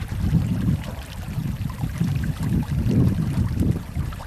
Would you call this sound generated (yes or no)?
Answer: yes